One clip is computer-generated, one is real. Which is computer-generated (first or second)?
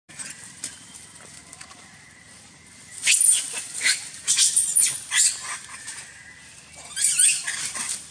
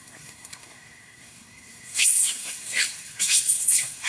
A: second